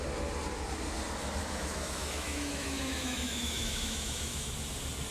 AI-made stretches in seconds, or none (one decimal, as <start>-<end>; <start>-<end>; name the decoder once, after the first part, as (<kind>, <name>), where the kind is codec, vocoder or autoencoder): 1.4-4.5 (autoencoder, DAC-VAE)